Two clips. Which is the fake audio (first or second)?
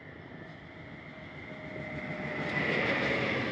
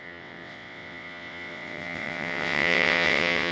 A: second